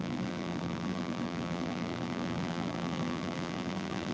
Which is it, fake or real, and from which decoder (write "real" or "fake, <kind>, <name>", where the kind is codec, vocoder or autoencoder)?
fake, vocoder, BigVGAN v2